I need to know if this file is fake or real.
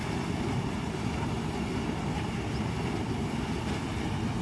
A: real